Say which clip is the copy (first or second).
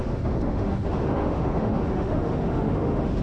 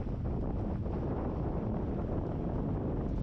first